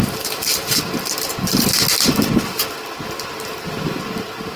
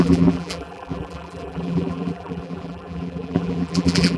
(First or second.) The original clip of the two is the first